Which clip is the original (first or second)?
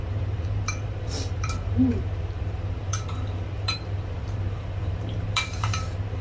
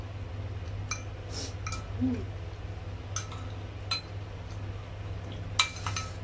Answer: second